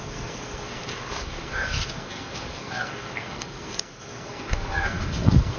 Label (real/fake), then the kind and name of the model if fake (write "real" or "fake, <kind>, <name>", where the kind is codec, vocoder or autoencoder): fake, codec, SNAC